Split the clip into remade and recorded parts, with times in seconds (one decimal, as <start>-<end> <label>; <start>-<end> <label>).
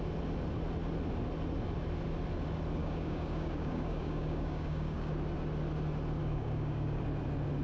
0.0-2.8 recorded; 2.8-5.1 remade; 5.1-6.2 recorded; 6.2-7.0 remade; 7.0-7.6 recorded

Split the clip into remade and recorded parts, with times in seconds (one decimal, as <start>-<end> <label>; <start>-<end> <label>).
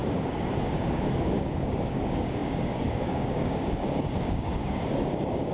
0.0-5.5 remade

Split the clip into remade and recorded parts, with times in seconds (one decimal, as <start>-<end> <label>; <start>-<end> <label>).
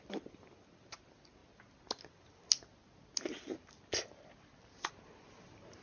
0.0-5.8 recorded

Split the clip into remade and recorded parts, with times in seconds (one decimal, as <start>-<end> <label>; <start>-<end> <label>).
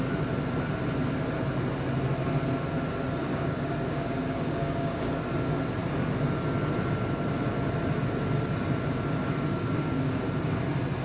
0.0-3.2 recorded; 3.2-5.1 remade; 5.1-9.5 recorded; 9.5-10.2 remade; 10.2-11.0 recorded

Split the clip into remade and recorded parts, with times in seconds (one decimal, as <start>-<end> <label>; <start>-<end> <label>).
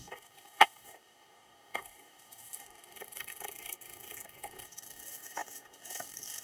0.0-6.4 remade